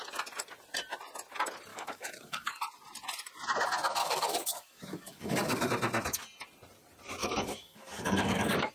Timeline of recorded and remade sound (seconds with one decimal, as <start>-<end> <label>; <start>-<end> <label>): 0.0-1.7 recorded; 1.7-2.6 remade; 2.6-4.0 recorded; 4.0-5.7 remade; 5.7-7.2 recorded; 7.2-8.7 remade